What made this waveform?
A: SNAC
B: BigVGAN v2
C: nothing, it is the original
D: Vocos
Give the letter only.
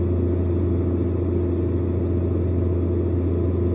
C